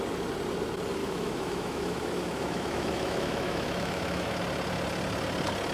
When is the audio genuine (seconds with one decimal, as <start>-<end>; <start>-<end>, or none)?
0.0-1.0; 4.4-5.7